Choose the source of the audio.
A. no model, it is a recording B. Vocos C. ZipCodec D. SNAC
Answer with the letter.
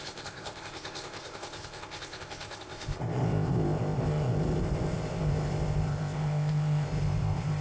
C